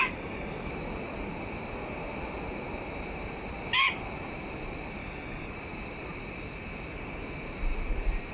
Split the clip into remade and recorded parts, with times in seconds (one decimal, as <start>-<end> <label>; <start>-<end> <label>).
0.0-0.7 remade; 0.7-5.0 recorded; 5.0-5.5 remade; 5.5-8.3 recorded